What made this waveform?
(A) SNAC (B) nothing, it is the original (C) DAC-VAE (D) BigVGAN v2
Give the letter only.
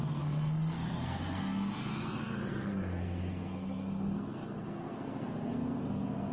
A